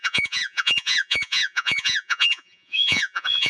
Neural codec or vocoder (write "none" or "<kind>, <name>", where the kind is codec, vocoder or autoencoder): vocoder, Vocos